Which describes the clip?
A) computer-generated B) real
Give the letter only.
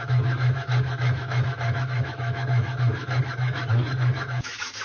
A